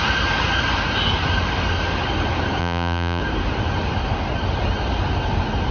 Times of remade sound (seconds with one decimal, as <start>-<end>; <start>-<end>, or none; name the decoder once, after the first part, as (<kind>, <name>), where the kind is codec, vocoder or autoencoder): 2.6-3.2 (vocoder, BigVGAN v2)